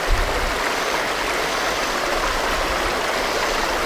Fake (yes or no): no